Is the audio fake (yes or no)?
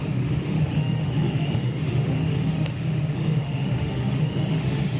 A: yes